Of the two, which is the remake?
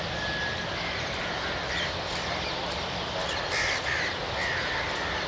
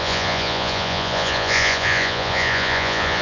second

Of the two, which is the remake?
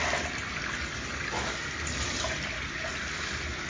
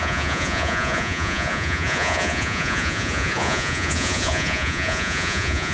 second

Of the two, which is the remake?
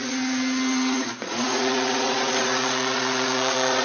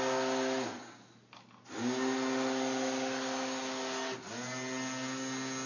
first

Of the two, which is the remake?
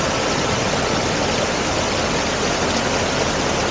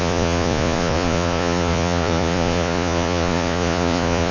second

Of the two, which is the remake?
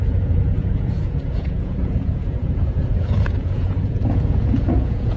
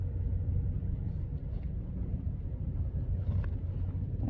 first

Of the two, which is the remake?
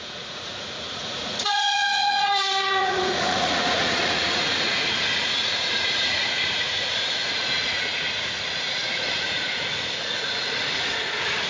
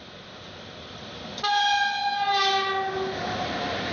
first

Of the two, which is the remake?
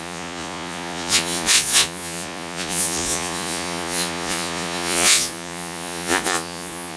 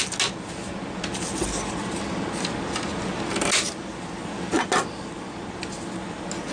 first